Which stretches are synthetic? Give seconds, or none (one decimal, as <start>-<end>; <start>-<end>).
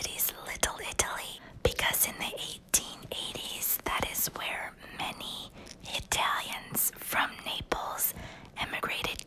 2.5-4.5; 5.9-6.5